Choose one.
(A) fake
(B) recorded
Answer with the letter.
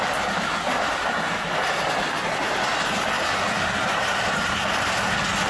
B